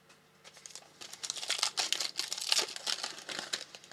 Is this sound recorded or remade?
recorded